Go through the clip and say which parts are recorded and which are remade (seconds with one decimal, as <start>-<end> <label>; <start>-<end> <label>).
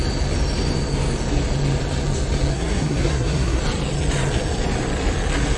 0.0-2.5 recorded; 2.5-3.6 remade; 3.6-5.6 recorded